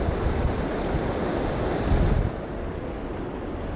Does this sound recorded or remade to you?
recorded